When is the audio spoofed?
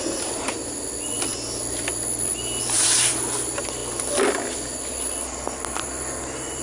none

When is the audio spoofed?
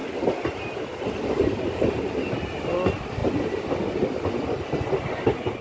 none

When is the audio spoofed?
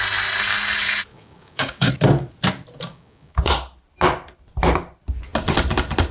1.1-1.9 (codec, DAC); 2.9-3.5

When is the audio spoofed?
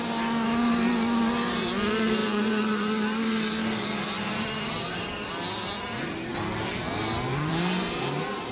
none